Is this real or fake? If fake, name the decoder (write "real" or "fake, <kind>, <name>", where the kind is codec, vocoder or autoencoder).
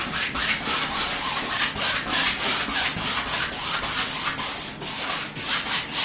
real